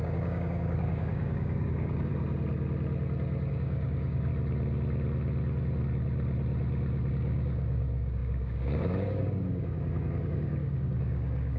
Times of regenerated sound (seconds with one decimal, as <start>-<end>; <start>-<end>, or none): 0.0-2.1; 3.5-4.3; 7.1-11.6